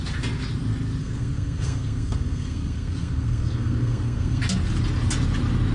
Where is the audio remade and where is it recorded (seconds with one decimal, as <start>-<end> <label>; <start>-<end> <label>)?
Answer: 0.0-1.0 recorded; 1.0-4.4 remade; 4.4-5.7 recorded